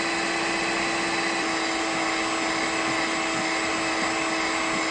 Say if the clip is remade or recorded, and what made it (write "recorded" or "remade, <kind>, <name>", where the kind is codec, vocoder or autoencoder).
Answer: recorded